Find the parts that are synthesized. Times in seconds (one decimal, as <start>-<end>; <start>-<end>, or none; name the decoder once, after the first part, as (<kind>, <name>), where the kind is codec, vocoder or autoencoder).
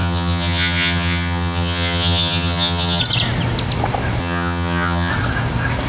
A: 0.0-3.0 (vocoder, HiFi-GAN); 4.2-5.1